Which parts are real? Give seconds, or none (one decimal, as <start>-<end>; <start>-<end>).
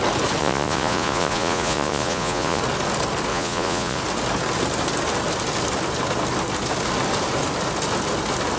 0.0-0.4; 2.6-3.3; 4.0-8.6